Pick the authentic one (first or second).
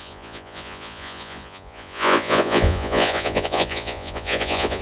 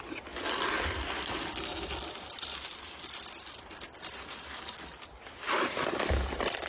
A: second